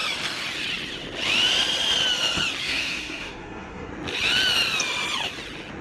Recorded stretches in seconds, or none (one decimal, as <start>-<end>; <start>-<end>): 0.0-2.6; 3.9-5.8